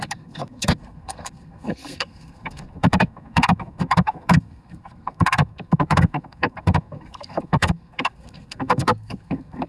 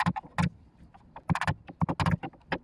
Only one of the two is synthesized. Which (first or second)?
first